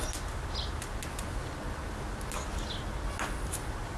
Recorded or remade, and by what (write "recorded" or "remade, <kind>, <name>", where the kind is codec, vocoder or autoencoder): recorded